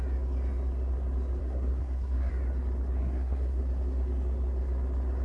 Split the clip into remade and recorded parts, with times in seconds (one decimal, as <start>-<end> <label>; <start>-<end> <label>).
0.0-1.4 recorded; 1.4-2.3 remade; 2.3-3.0 recorded; 3.0-3.6 remade; 3.6-5.2 recorded